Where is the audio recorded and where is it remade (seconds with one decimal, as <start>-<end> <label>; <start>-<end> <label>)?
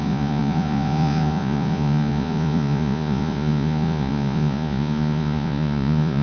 0.0-6.2 remade